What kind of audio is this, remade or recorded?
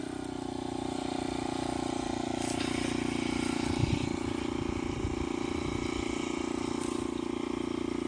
recorded